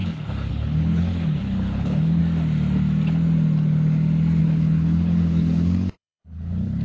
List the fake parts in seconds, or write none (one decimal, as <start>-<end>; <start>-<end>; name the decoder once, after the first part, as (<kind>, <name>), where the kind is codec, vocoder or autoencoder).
0.0-2.2 (codec, HILCodec); 4.4-6.8